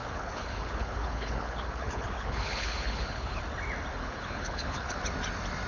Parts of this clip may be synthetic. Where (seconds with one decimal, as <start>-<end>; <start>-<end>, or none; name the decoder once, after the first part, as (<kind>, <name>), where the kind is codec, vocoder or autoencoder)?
0.0-3.4 (codec, HILCodec); 3.9-5.0